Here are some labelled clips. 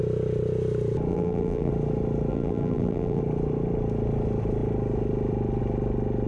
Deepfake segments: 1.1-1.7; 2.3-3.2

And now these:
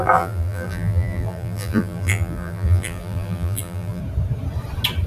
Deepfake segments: 0.0-4.0

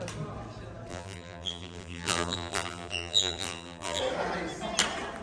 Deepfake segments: 0.9-4.0